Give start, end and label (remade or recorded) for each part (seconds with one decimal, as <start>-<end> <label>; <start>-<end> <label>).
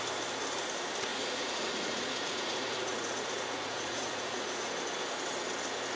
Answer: 0.0-1.1 recorded; 1.1-4.7 remade; 4.7-6.0 recorded